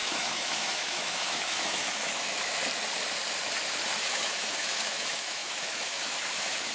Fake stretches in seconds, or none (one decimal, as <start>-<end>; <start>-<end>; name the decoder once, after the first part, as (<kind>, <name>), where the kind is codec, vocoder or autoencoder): 0.0-2.6 (autoencoder, DAC-VAE); 4.0-6.7